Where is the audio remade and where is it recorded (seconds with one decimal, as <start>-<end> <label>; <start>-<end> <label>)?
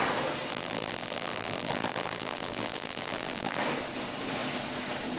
0.0-0.5 recorded; 0.5-3.6 remade; 3.6-5.2 recorded